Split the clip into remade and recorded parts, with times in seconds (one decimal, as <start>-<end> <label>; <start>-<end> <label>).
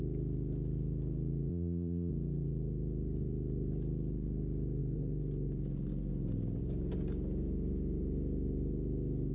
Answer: 0.0-1.5 recorded; 1.5-2.1 remade; 2.1-9.3 recorded